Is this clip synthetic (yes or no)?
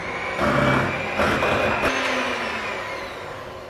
no